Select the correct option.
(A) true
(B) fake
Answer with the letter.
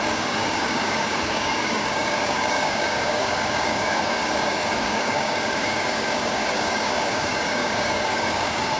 B